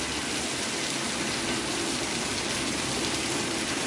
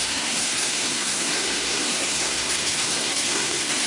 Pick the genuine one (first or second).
first